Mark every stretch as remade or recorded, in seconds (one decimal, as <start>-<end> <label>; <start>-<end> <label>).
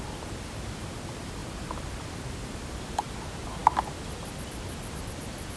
0.0-5.6 recorded